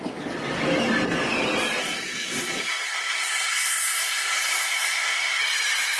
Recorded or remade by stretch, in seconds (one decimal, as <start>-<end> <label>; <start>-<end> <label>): 0.0-1.8 recorded; 1.8-5.4 remade; 5.4-6.0 recorded